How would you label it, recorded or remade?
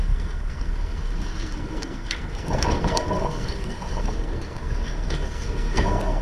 remade